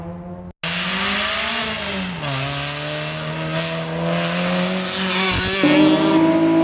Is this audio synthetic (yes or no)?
no